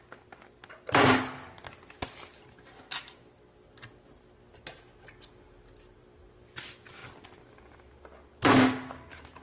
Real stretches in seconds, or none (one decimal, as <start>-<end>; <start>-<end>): 0.0-9.4